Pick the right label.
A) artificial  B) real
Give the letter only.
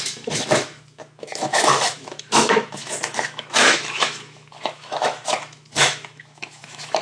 A